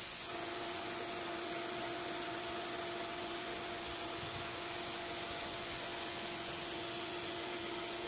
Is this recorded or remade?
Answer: remade